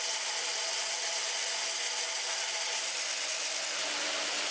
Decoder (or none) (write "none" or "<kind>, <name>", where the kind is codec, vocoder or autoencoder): none